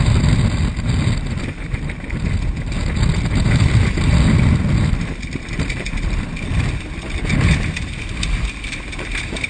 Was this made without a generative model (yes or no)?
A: yes